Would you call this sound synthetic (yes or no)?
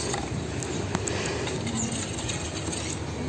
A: no